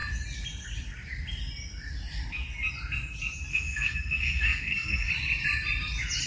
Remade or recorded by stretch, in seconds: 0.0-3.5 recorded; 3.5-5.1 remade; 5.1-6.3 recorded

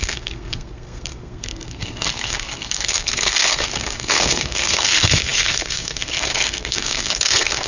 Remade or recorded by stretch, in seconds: 0.0-7.7 remade